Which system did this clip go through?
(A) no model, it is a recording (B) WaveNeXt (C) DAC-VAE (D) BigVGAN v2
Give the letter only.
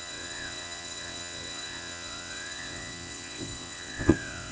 B